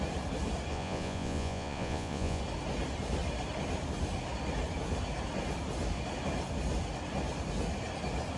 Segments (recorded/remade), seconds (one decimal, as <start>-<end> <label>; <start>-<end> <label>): 0.0-0.7 recorded; 0.7-2.4 remade; 2.4-8.4 recorded